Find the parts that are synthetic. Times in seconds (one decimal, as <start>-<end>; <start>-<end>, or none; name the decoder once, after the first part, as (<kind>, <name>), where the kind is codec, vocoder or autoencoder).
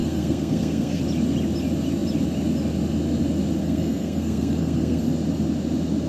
0.0-1.0 (codec, SNAC); 3.6-5.0